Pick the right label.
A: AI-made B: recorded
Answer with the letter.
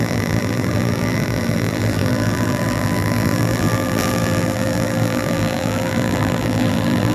A